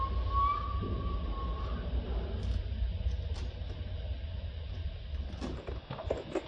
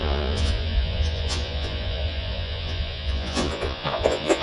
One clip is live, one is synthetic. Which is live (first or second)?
first